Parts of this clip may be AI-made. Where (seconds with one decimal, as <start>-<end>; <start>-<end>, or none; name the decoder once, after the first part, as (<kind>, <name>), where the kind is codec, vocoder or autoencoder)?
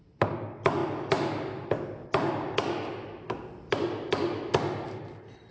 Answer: none